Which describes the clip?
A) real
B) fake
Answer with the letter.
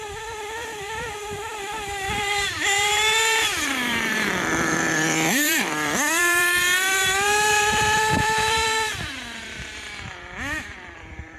B